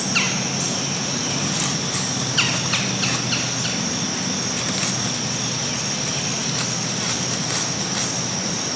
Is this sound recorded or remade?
recorded